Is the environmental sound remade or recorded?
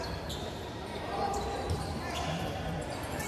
remade